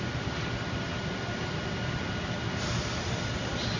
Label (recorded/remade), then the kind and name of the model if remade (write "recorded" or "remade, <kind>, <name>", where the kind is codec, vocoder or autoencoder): recorded